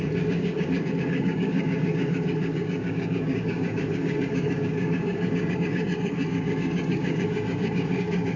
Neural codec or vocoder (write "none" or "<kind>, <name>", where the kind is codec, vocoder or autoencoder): codec, DAC